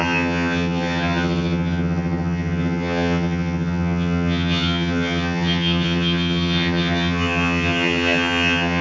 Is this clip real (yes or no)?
no